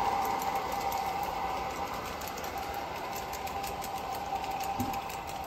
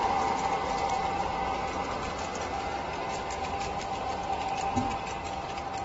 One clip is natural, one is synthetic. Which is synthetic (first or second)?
first